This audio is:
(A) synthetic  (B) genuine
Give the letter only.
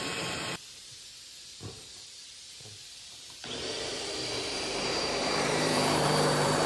A